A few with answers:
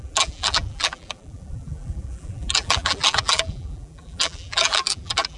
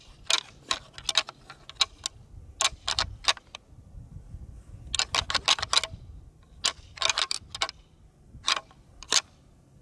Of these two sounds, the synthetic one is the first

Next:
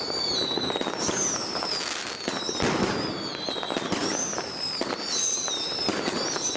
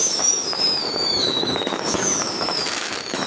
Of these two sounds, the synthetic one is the second